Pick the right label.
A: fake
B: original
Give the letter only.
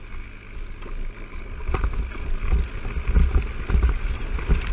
B